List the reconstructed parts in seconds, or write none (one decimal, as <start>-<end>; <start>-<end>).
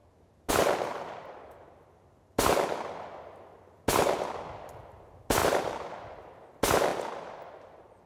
0.9-1.8; 5.4-5.9; 6.9-8.1